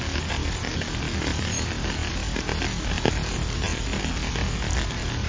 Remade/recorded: recorded